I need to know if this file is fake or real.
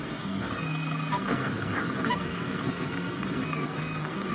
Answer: fake